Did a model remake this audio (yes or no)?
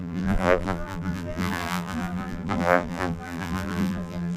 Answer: yes